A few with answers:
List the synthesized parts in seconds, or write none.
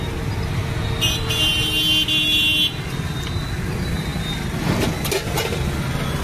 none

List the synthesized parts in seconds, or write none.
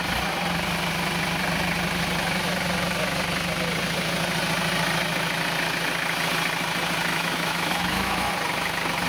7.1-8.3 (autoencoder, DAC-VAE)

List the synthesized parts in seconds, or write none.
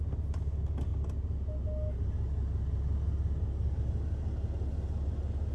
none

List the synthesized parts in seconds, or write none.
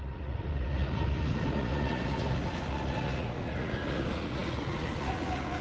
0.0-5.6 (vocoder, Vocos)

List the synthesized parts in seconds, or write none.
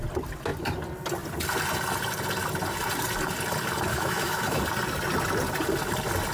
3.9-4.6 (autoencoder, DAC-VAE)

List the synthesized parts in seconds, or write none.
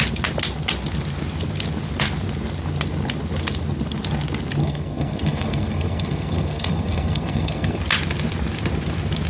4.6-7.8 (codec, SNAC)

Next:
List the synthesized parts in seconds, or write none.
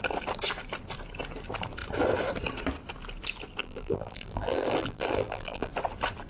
3.6-5.7 (vocoder, BigVGAN v2)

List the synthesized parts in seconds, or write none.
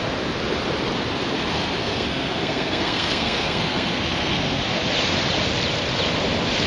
1.8-4.6 (codec, SNAC)